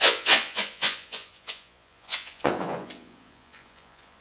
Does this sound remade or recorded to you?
remade